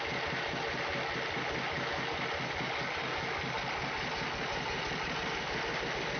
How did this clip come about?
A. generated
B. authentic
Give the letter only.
B